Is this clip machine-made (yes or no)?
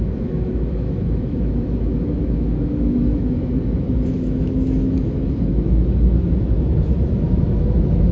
yes